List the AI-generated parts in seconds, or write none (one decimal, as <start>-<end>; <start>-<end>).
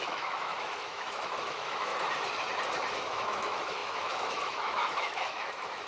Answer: 0.0-1.9; 2.9-5.9